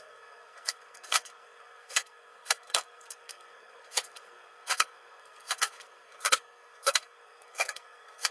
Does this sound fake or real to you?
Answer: fake